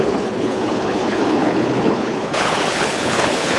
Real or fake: fake